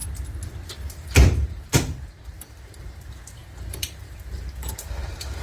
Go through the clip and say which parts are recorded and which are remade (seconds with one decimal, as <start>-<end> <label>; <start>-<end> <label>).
0.0-0.9 recorded; 0.9-5.4 remade